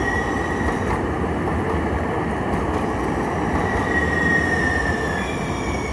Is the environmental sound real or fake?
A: real